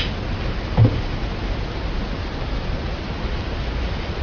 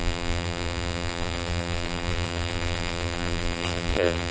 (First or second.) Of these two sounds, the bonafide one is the first